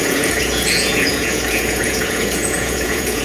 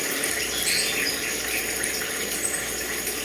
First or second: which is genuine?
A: second